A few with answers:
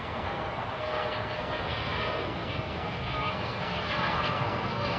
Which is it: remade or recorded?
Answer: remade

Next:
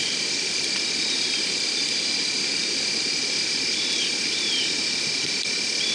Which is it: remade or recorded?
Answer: recorded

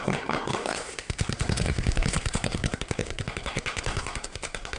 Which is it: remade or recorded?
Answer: remade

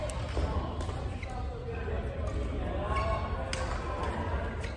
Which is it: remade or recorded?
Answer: recorded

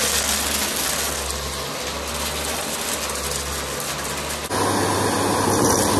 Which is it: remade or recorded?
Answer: recorded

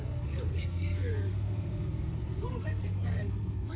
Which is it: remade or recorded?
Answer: remade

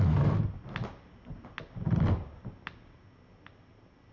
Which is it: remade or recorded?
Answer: recorded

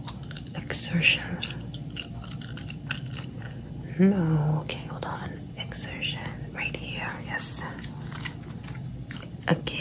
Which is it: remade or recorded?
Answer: recorded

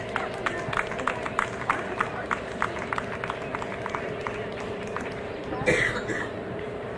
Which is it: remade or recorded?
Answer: recorded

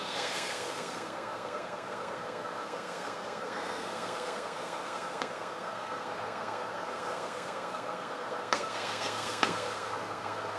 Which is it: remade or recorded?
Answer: remade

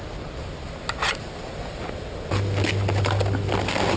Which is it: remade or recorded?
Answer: recorded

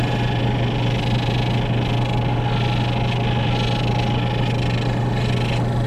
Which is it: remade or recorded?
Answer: recorded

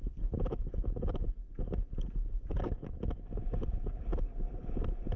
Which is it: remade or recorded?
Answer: recorded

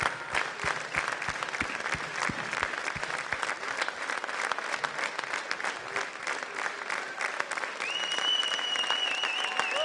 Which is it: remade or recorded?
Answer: recorded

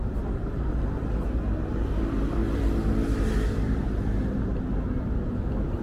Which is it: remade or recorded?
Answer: recorded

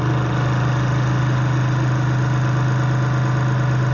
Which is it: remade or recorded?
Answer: recorded